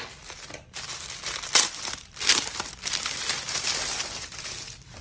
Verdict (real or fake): fake